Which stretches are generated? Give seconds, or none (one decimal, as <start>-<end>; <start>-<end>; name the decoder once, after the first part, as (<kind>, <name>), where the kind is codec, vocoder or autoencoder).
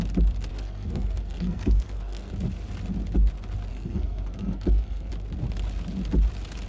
0.5-2.3 (codec, SNAC); 3.7-5.1